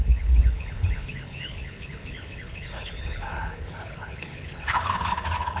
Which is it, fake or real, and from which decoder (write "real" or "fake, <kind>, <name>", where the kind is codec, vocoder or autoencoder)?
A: fake, codec, HILCodec